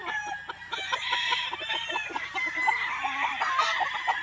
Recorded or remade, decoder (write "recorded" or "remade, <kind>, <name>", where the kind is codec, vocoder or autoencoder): recorded